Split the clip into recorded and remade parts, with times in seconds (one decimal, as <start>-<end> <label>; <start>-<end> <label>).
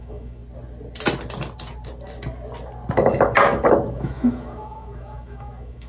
0.0-0.4 remade; 0.4-3.9 recorded; 3.9-5.9 remade